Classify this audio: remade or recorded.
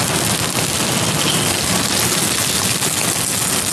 recorded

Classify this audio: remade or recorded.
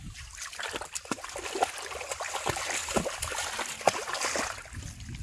recorded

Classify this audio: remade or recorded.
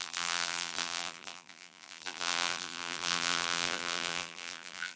remade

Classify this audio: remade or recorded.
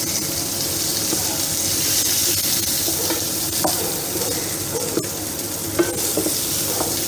recorded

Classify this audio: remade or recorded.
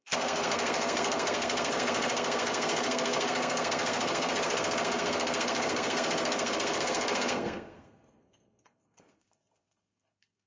remade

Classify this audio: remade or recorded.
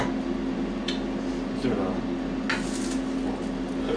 recorded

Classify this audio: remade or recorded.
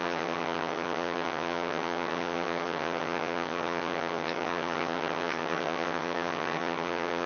remade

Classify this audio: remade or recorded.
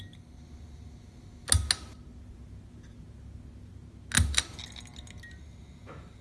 recorded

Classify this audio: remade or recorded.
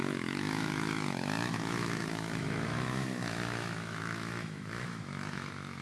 remade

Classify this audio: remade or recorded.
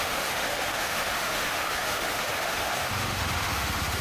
remade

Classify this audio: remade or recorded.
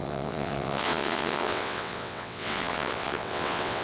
remade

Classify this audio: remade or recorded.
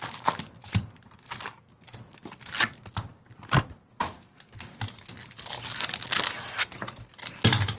recorded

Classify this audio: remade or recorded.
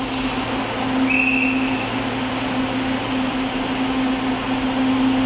recorded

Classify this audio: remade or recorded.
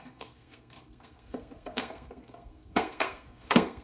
remade